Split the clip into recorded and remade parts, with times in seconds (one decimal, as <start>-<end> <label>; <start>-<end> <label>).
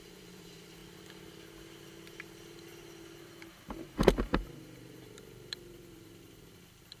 0.0-0.8 remade; 0.8-4.2 recorded; 4.2-7.0 remade